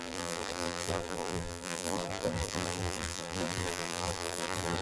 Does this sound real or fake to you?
fake